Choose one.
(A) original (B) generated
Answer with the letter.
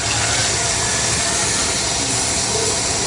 A